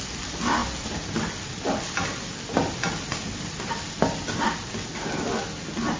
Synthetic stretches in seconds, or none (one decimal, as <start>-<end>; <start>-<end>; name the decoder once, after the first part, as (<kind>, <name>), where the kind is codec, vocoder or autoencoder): none